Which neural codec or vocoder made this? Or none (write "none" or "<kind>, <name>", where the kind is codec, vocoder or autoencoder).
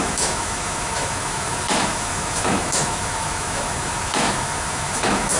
autoencoder, DAC-VAE